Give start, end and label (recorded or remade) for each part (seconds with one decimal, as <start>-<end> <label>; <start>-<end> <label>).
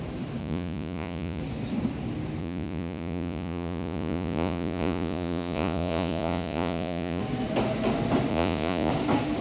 0.0-0.4 recorded; 0.4-1.4 remade; 1.4-2.4 recorded; 2.4-7.2 remade; 7.2-8.3 recorded; 8.3-8.9 remade; 8.9-9.4 recorded